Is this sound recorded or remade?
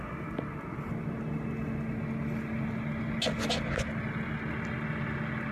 recorded